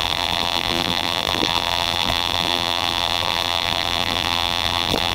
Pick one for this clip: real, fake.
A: fake